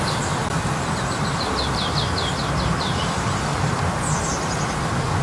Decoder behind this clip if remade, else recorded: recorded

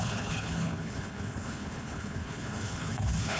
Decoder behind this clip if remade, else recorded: remade, codec, HILCodec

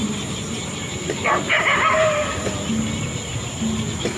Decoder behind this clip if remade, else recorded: recorded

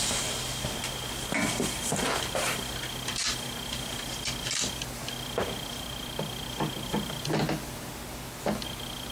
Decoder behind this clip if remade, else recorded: recorded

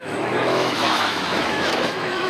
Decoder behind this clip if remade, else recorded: remade, autoencoder, DAC-VAE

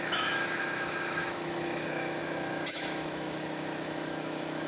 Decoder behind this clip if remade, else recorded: remade, autoencoder, DAC-VAE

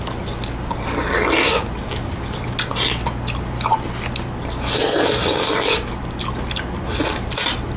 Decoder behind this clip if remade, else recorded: recorded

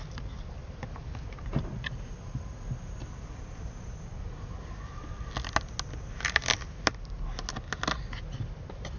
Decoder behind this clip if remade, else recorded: recorded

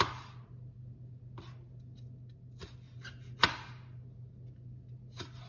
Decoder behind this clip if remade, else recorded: recorded